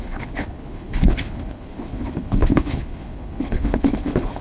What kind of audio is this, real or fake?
fake